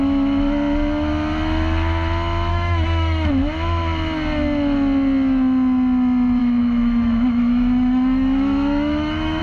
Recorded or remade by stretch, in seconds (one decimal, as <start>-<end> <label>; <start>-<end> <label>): 0.0-2.5 recorded; 2.5-3.3 remade; 3.3-6.4 recorded; 6.4-9.4 remade

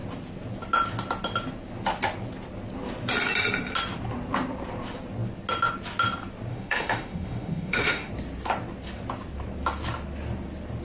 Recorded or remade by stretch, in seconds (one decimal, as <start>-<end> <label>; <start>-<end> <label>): 0.0-6.5 recorded; 6.5-8.1 remade; 8.1-10.8 recorded